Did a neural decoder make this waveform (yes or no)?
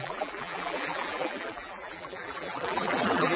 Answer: yes